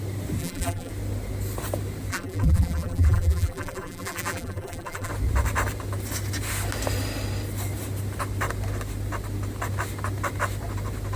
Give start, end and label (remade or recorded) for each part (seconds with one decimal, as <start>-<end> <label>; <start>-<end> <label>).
0.0-0.4 recorded; 0.4-0.9 remade; 0.9-2.1 recorded; 2.1-5.1 remade; 5.1-11.2 recorded